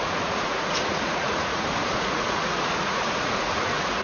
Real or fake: fake